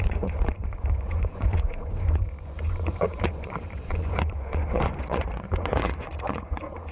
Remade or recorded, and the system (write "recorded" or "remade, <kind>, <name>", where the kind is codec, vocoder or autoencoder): remade, vocoder, Vocos